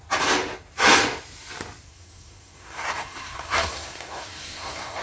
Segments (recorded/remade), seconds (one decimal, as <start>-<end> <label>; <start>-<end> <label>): 0.0-1.9 recorded; 1.9-5.0 remade